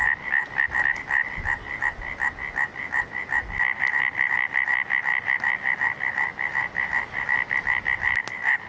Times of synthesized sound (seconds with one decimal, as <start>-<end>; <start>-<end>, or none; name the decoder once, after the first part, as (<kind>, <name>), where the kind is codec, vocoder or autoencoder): none